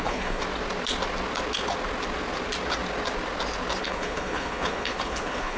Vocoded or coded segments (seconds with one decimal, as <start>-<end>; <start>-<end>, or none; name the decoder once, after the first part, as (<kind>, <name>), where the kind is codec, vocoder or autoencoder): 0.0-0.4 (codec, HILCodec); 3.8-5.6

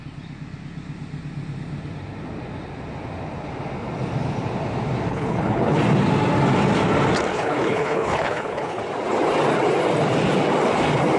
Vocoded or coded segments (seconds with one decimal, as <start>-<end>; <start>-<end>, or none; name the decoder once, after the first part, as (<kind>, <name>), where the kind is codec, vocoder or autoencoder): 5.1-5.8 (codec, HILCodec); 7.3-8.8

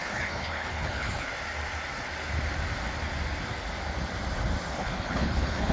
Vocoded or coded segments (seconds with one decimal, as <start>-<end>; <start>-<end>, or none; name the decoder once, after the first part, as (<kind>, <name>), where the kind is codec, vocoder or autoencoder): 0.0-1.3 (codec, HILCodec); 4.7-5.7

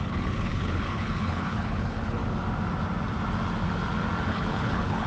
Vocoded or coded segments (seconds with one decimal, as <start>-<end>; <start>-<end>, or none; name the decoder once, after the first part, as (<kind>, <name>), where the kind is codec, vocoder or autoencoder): 0.0-2.2 (codec, HILCodec); 4.3-5.1

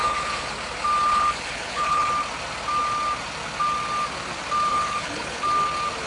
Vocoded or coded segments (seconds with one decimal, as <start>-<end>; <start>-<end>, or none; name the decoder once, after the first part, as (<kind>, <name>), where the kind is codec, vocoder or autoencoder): 0.0-0.5 (codec, HILCodec); 1.1-2.1; 4.7-5.4